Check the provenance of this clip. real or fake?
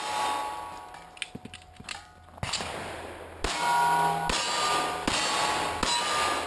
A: real